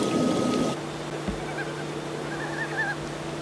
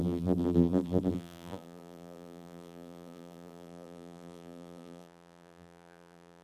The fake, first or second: second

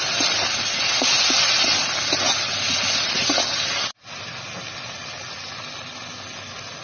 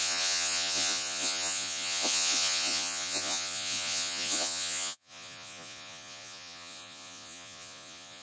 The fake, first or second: second